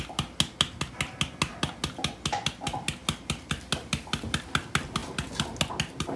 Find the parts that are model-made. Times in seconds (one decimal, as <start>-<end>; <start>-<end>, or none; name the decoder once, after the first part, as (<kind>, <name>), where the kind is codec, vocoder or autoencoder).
none